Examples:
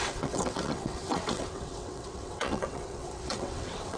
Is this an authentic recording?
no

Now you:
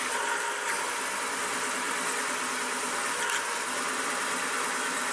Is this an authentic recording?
yes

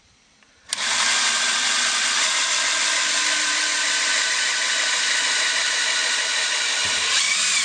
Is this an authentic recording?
no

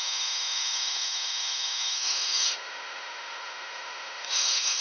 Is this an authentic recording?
no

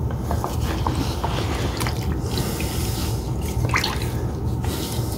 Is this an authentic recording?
yes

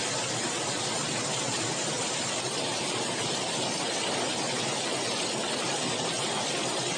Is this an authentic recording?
yes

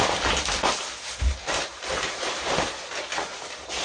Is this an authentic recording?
yes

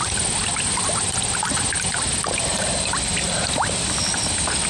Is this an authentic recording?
yes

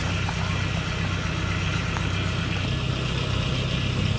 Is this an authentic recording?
yes